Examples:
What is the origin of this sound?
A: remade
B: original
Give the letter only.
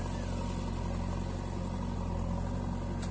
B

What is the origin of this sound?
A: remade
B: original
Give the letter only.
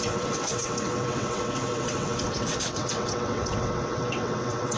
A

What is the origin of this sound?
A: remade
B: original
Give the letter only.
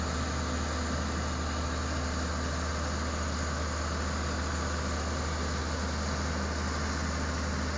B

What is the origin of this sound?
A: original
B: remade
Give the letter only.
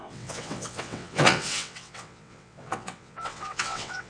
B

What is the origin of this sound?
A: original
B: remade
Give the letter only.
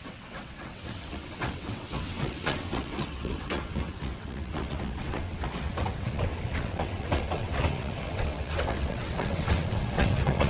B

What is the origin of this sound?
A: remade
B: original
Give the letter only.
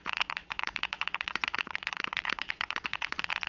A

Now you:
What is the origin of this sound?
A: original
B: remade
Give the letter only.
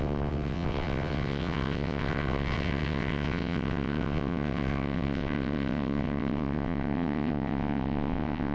B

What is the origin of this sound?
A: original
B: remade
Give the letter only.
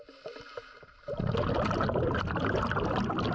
A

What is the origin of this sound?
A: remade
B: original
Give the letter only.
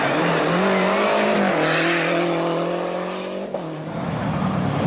B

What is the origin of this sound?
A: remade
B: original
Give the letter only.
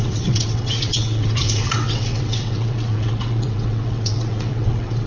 A